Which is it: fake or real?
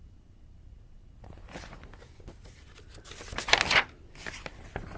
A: real